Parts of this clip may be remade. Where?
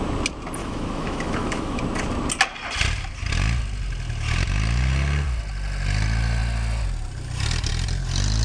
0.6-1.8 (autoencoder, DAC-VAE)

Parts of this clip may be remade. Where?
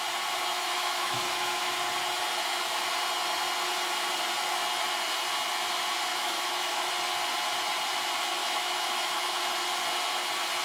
0.5-1.7 (autoencoder, DAC-VAE); 6.1-6.9; 8.4-9.4